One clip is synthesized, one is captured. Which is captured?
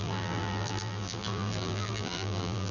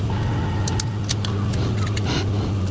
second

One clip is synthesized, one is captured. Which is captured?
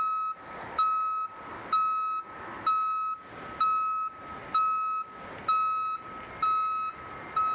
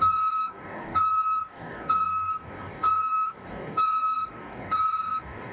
first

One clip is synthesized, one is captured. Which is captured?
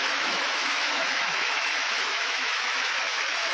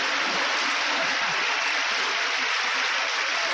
second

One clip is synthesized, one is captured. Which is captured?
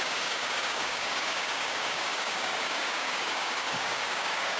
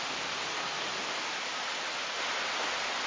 second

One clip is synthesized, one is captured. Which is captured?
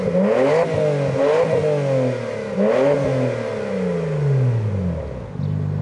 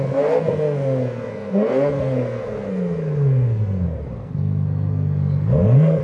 first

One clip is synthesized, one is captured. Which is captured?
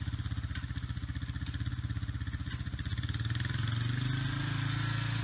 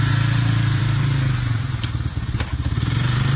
first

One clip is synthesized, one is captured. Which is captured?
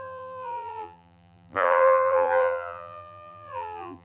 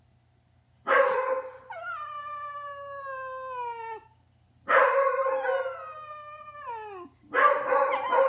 second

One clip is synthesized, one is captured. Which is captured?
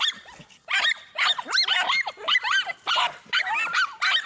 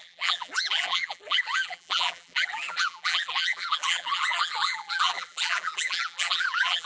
first